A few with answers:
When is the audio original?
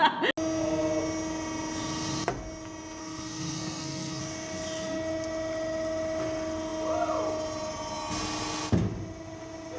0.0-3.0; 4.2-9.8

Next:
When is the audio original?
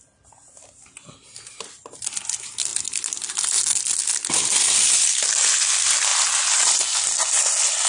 0.0-7.9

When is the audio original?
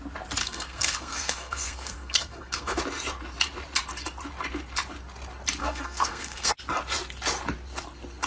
0.0-0.4; 2.8-5.6; 6.5-8.3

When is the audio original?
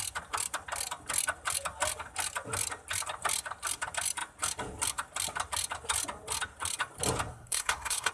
0.0-7.3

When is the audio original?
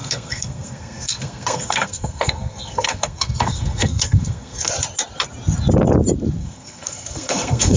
4.7-6.4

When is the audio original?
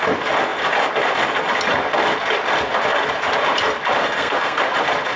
0.0-4.0; 4.6-5.2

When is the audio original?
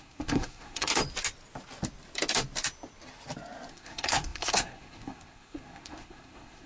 0.9-3.7